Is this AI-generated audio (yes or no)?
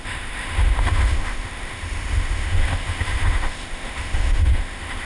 yes